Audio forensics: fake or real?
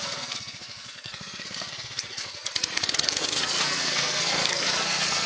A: fake